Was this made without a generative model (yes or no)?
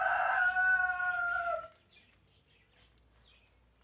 yes